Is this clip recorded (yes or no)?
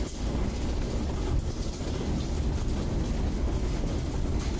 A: yes